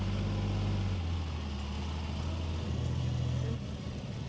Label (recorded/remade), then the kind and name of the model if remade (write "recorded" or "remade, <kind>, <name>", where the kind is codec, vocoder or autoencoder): recorded